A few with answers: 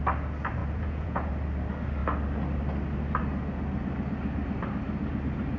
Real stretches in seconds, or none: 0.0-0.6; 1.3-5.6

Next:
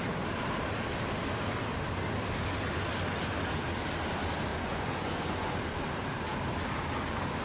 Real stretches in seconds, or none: 0.0-4.5; 5.6-7.4

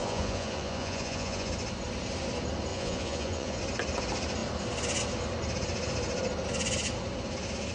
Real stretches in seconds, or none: 1.5-2.7; 3.6-7.7